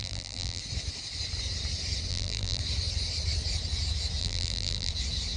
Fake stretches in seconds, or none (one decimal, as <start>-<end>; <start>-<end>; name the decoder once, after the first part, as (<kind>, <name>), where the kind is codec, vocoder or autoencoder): 0.0-0.6 (vocoder, BigVGAN v2); 2.1-2.6; 4.2-4.9